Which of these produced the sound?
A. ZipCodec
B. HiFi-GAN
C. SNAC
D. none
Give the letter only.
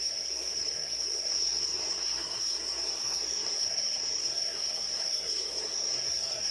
C